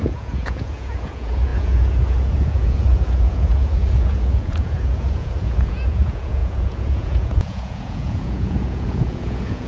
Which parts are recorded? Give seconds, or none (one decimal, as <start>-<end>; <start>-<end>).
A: none